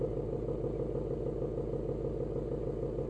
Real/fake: real